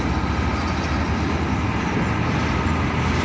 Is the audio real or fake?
real